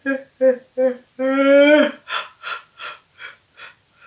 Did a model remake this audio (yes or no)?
no